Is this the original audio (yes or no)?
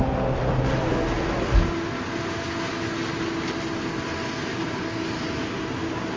yes